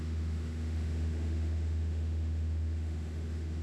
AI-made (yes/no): yes